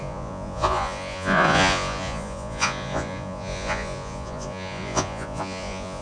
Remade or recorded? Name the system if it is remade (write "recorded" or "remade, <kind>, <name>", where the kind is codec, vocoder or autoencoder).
remade, vocoder, Vocos